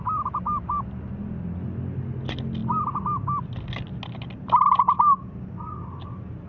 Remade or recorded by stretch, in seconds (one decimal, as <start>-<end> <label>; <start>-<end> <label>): 0.0-6.5 recorded

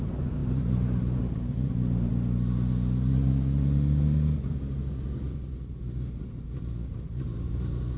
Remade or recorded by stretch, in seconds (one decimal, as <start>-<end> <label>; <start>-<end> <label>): 0.0-2.1 remade; 2.1-6.9 recorded; 6.9-8.0 remade